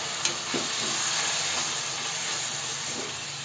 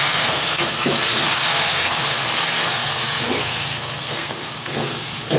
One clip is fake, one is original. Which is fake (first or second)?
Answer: second